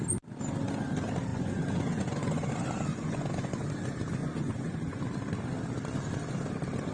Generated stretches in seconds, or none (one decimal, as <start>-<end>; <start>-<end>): 1.3-2.5; 2.9-3.7; 4.2-5.0